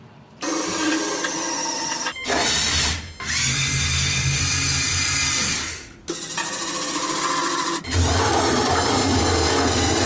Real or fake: real